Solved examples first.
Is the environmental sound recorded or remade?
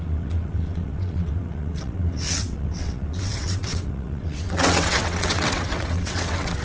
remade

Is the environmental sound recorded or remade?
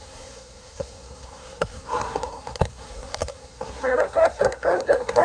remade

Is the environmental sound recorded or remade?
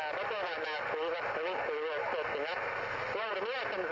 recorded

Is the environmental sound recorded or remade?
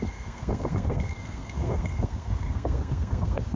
remade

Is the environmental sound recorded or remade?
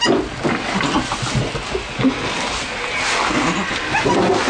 recorded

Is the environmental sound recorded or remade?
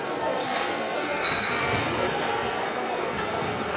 remade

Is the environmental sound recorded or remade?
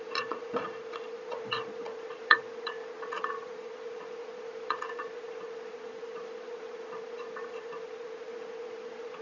remade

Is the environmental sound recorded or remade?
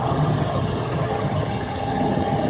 remade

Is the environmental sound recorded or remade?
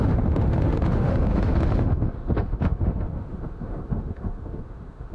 remade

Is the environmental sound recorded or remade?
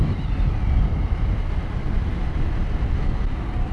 recorded